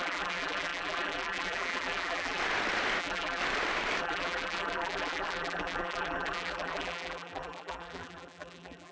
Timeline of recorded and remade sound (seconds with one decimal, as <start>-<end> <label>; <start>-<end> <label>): 0.0-2.4 remade; 2.4-3.0 recorded; 3.0-3.4 remade; 3.4-4.0 recorded; 4.0-8.9 remade